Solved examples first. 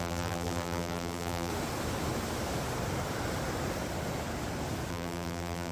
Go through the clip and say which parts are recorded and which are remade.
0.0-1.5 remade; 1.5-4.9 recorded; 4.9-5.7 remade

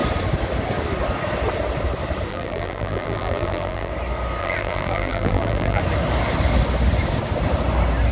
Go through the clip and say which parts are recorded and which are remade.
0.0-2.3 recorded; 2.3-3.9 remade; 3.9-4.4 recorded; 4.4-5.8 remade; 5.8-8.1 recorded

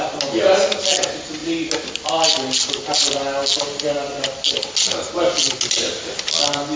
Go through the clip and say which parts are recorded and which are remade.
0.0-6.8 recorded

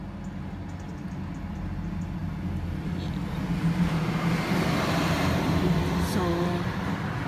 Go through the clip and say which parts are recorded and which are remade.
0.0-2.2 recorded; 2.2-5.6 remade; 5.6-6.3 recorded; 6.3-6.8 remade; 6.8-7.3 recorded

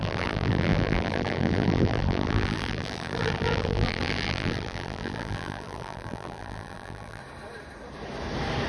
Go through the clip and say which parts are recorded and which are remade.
0.0-7.2 remade; 7.2-8.7 recorded